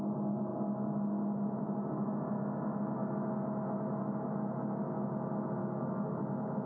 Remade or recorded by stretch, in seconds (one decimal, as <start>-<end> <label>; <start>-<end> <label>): 0.0-5.6 recorded; 5.6-6.2 remade; 6.2-6.7 recorded